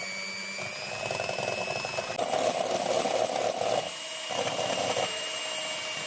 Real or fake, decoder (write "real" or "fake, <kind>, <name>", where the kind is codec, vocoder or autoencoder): real